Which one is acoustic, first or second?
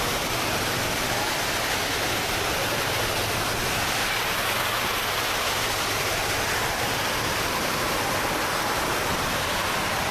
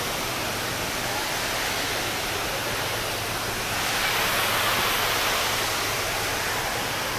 second